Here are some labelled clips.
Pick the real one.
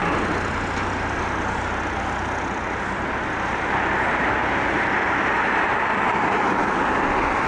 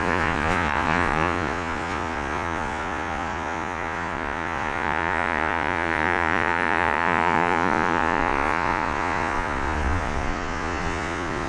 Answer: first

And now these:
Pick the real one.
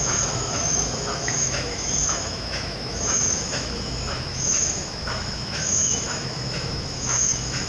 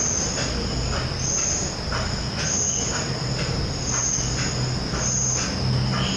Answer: second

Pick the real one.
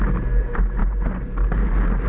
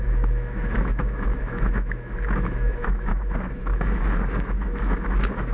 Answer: first